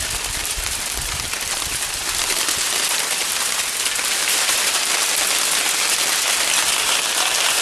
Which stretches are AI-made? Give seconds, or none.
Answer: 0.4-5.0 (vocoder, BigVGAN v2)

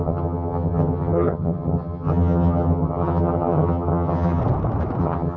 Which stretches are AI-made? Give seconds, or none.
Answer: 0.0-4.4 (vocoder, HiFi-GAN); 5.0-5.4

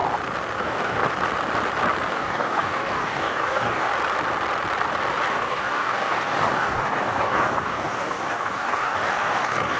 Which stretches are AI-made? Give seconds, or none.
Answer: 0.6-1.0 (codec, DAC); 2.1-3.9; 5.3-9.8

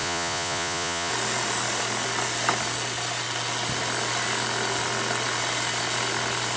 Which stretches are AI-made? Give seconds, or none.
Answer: 0.0-1.1 (vocoder, Vocos)

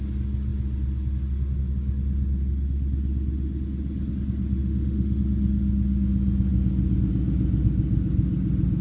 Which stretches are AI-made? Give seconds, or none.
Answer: 4.6-5.2 (autoencoder, DAC-VAE)